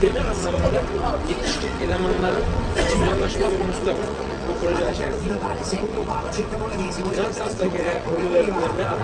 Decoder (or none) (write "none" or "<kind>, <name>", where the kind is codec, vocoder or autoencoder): vocoder, WaveNeXt